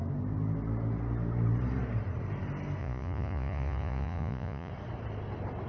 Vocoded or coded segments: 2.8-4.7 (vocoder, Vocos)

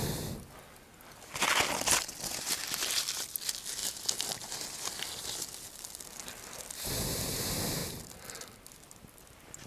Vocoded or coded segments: none

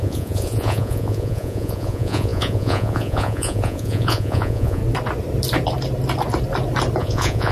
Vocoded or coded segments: 0.0-4.8 (vocoder, Vocos); 7.0-7.5

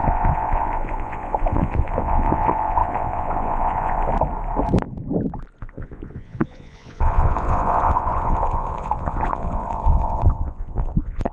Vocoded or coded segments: 0.0-4.1 (vocoder, Vocos); 5.6-11.3

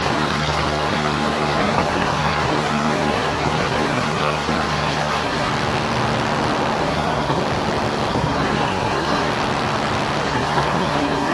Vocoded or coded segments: 0.0-5.5 (codec, SNAC); 6.8-7.4; 8.1-9.3; 10.2-11.3

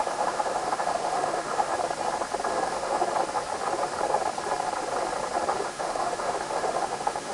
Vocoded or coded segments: 0.0-1.7 (autoencoder, DAC-VAE); 2.5-3.0; 5.6-7.3